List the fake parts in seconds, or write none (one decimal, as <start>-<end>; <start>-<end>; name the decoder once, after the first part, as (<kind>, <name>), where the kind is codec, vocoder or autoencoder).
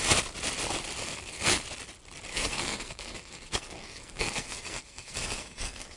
1.0-1.6 (codec, SNAC); 2.3-6.0